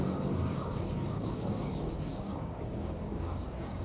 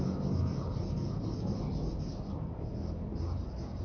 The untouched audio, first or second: second